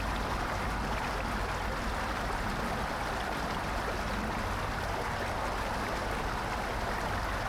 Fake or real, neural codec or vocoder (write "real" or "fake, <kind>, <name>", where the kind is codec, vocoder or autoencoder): real